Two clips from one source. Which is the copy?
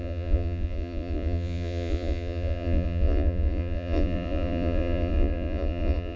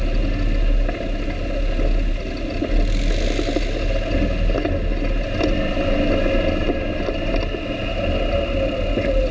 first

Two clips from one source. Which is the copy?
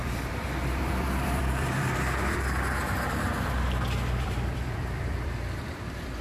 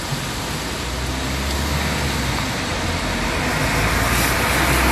first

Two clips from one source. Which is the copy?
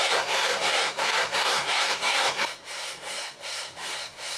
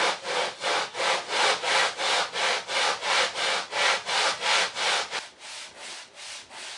first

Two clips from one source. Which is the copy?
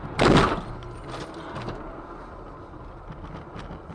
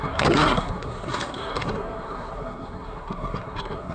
second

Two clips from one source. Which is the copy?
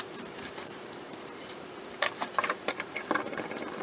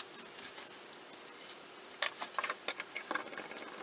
first